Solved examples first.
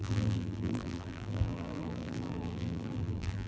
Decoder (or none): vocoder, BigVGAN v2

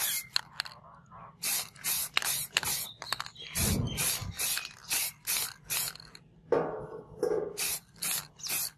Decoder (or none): none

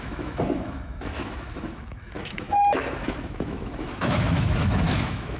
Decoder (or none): autoencoder, DAC-VAE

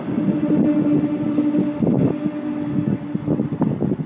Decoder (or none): none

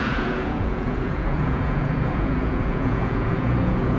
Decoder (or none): vocoder, Vocos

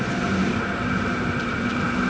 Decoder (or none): none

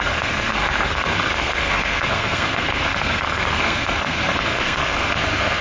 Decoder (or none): codec, SNAC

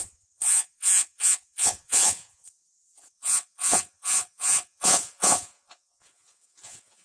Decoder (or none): vocoder, Vocos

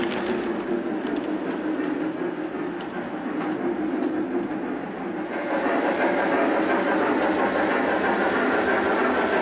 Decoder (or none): none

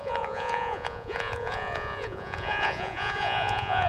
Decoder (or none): vocoder, Vocos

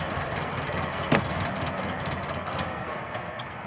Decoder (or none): codec, SNAC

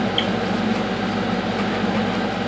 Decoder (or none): none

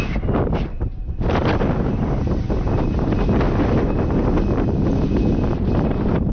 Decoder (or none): none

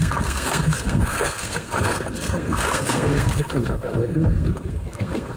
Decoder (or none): codec, SNAC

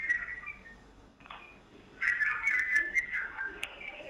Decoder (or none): codec, DAC